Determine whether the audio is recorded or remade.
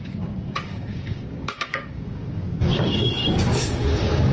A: remade